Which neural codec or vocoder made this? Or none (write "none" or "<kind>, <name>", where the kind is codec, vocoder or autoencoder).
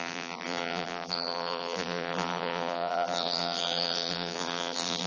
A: vocoder, BigVGAN v2